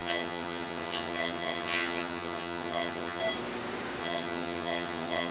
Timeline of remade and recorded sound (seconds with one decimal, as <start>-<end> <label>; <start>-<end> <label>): 0.0-3.2 remade; 3.2-4.0 recorded; 4.0-5.3 remade